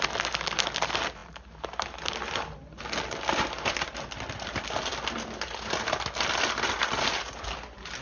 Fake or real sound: real